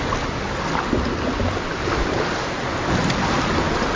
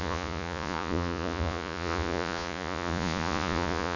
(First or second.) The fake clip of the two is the second